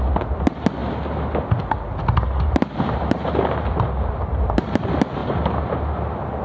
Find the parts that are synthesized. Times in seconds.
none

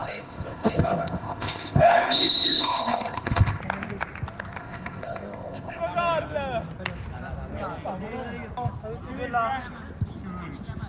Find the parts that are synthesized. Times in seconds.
0.0-3.6; 4.6-5.8

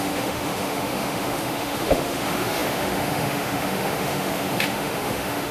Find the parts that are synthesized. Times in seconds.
0.0-5.5